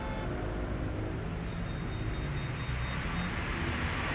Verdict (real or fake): real